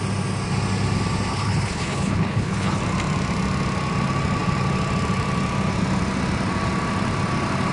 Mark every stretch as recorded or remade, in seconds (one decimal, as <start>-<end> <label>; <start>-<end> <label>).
0.0-1.3 recorded; 1.3-2.8 remade; 2.8-7.7 recorded